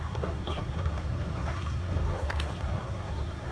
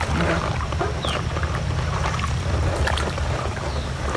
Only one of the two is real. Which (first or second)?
second